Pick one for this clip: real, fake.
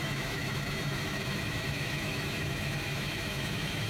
fake